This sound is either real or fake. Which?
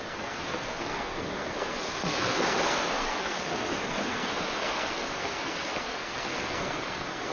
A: fake